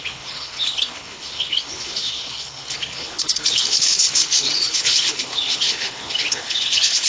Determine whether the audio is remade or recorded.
remade